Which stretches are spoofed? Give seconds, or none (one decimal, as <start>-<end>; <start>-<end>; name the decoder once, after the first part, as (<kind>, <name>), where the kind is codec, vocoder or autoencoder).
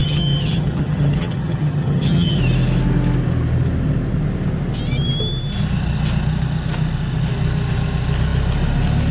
0.0-2.4 (vocoder, HiFi-GAN)